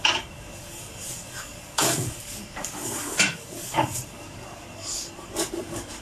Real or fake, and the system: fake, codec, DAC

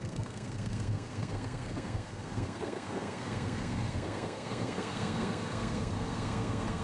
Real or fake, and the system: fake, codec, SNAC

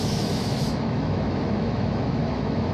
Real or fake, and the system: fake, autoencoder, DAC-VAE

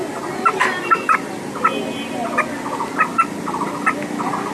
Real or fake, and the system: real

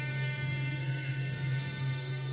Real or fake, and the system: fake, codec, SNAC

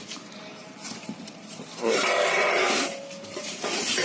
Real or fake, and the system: fake, vocoder, BigVGAN v2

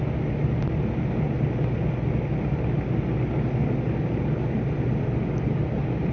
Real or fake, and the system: real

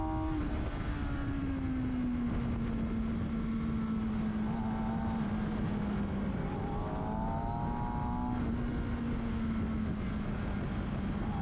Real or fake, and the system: real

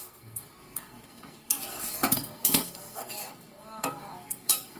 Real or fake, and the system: fake, codec, SNAC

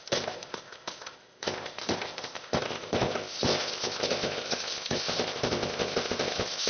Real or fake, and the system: fake, codec, ZipCodec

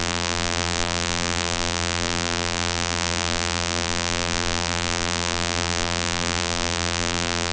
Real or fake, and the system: fake, vocoder, BigVGAN v2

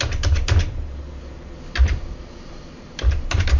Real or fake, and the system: fake, vocoder, BigVGAN v2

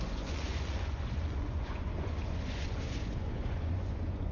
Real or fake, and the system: fake, vocoder, Vocos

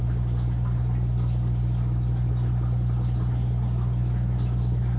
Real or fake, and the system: real